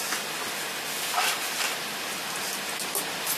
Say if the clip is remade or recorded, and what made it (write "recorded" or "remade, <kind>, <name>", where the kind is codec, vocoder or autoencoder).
recorded